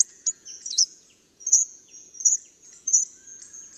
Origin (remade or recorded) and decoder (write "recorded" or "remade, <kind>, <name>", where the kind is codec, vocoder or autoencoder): remade, vocoder, Vocos